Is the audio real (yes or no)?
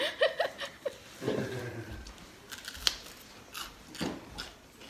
yes